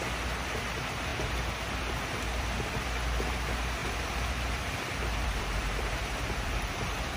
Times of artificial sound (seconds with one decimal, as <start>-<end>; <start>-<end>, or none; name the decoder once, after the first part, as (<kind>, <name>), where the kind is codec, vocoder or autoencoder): 1.1-3.3 (vocoder, BigVGAN v2); 3.8-7.2